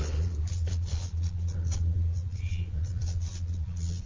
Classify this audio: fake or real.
fake